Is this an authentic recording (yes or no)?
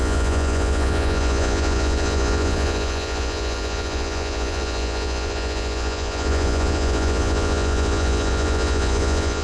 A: no